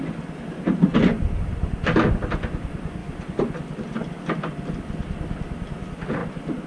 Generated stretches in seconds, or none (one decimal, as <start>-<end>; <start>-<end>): 6.2-6.7